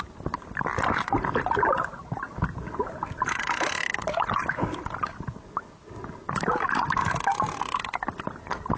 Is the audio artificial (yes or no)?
no